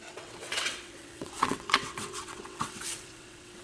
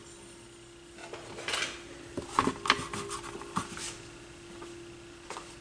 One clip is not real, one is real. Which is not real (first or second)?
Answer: first